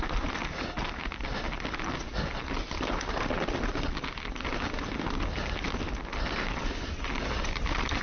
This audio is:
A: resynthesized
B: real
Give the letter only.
B